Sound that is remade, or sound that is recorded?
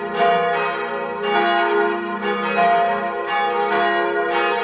recorded